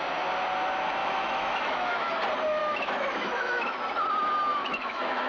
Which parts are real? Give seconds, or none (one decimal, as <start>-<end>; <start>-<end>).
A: 0.0-1.0; 2.1-2.6; 3.8-4.5